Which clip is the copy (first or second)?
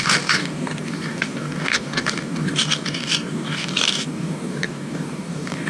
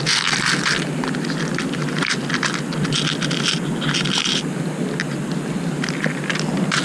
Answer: first